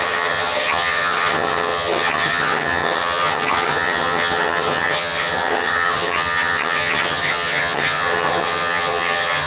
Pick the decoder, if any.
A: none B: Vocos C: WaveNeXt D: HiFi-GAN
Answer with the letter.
D